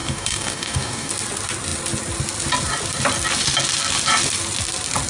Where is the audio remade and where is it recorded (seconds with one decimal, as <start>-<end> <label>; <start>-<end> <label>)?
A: 0.0-1.1 remade; 1.1-5.1 recorded